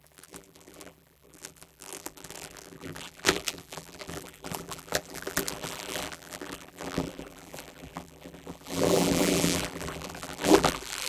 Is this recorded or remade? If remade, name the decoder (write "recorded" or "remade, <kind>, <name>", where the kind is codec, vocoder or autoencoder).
remade, vocoder, BigVGAN v2